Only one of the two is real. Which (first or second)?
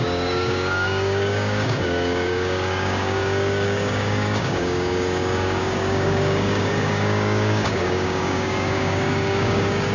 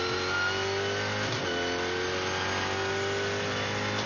second